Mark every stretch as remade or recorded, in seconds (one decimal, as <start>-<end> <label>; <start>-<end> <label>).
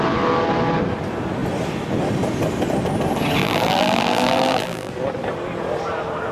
0.0-3.4 recorded; 3.4-4.9 remade; 4.9-6.3 recorded